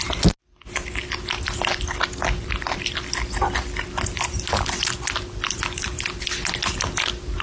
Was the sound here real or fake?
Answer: real